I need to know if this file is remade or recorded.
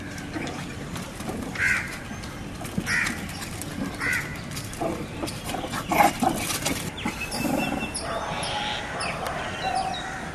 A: recorded